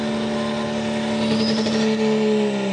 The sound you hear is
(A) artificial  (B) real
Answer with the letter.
B